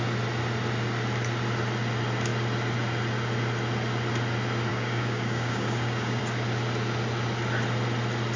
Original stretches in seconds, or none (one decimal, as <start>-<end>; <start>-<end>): 0.0-4.7; 6.2-8.4